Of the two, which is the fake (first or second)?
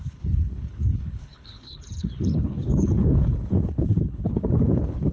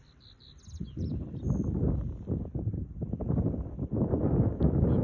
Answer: first